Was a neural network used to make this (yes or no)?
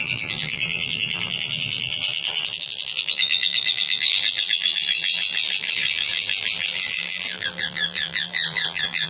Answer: yes